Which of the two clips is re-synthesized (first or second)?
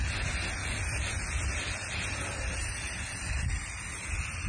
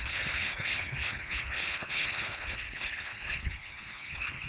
second